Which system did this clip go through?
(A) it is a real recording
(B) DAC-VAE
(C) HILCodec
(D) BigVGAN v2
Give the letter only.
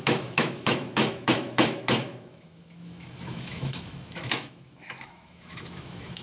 B